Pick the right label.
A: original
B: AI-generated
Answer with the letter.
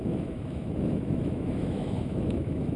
B